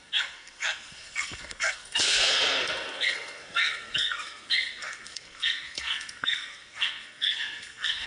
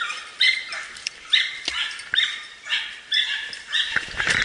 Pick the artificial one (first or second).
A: first